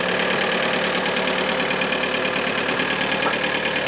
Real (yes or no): yes